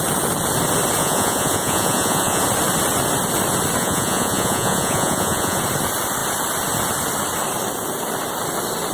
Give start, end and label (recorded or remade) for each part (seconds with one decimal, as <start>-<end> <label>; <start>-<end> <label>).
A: 0.0-1.0 recorded; 1.0-2.4 remade; 2.4-3.8 recorded; 3.8-5.6 remade; 5.6-8.9 recorded